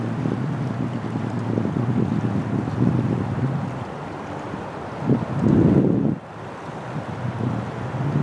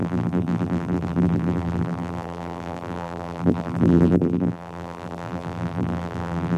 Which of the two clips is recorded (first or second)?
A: first